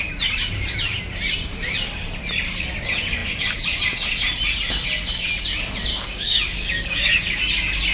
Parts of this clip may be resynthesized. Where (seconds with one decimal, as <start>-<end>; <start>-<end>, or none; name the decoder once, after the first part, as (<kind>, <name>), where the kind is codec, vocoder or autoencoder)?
5.9-7.4 (codec, DAC)